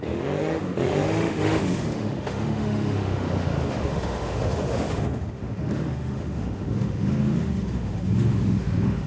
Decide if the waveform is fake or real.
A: fake